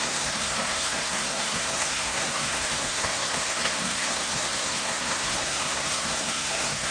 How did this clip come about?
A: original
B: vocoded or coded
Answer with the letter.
B